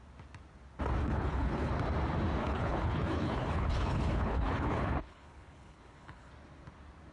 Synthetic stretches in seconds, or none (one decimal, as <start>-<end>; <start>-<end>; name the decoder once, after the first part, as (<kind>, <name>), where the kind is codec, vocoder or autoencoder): 1.0-1.7 (codec, HILCodec); 2.4-6.3